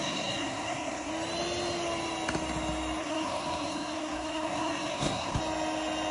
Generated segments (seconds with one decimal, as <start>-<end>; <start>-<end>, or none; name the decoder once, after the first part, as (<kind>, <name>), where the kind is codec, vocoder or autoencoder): 0.0-1.1 (codec, SNAC); 3.0-5.4

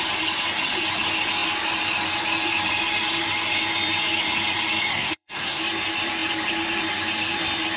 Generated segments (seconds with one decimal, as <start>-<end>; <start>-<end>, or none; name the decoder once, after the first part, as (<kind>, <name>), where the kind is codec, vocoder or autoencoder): 4.9-5.6 (codec, SNAC)